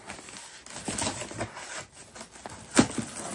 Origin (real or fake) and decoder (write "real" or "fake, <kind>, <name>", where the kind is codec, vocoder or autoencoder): real